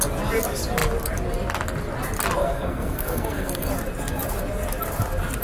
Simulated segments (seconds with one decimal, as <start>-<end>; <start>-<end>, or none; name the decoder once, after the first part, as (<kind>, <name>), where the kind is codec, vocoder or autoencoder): 2.4-3.7 (codec, SNAC)